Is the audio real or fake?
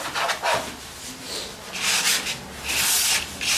real